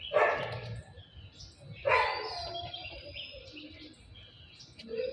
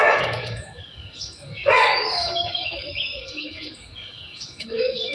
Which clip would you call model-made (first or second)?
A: second